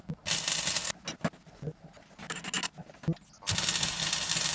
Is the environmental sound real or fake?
real